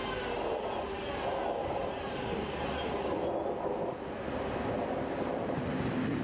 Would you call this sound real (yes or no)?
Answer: yes